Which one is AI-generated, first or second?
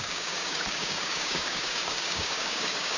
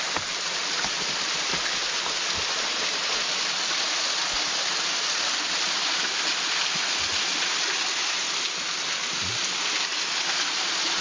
first